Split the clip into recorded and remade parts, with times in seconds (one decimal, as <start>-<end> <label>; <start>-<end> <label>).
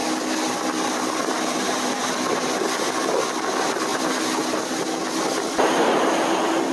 0.0-6.7 recorded